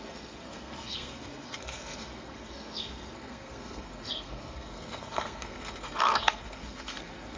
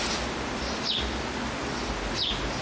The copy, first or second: first